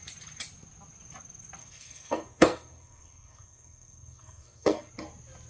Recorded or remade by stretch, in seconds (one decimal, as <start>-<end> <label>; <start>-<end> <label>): 0.0-1.6 recorded; 1.6-4.9 remade; 4.9-5.5 recorded